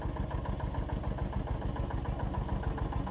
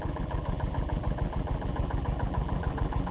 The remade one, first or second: second